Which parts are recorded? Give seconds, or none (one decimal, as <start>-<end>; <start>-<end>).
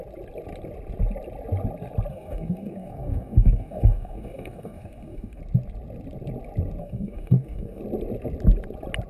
0.0-2.1; 5.4-6.8; 7.8-9.1